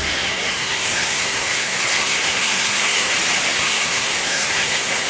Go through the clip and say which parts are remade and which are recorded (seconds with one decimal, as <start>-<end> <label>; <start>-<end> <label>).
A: 0.0-3.1 remade; 3.1-3.5 recorded; 3.5-5.1 remade